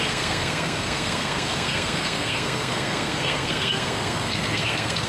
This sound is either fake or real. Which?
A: fake